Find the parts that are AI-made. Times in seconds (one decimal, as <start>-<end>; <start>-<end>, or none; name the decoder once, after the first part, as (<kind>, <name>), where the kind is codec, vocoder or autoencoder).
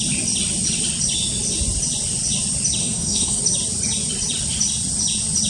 2.8-3.4 (codec, SNAC)